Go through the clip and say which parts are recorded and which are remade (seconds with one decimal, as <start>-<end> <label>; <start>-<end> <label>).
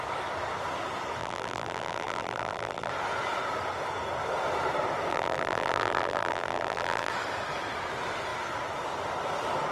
0.0-1.2 recorded; 1.2-2.9 remade; 2.9-5.1 recorded; 5.1-7.1 remade; 7.1-9.7 recorded